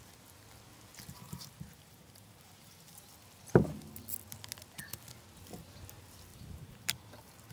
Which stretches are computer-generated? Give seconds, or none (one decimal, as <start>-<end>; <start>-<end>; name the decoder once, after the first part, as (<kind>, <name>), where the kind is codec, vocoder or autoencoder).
1.2-3.1 (vocoder, BigVGAN v2); 6.3-7.1